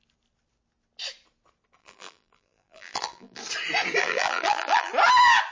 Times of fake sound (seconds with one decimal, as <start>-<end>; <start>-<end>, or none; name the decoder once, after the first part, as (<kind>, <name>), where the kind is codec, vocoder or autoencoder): 1.8-3.4 (vocoder, BigVGAN v2); 4.0-4.9